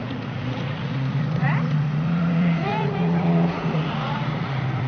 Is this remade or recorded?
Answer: remade